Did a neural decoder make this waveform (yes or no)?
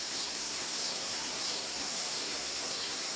yes